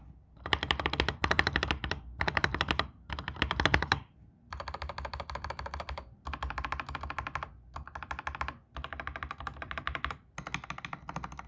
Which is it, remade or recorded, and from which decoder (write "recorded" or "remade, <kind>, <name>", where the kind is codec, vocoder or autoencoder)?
recorded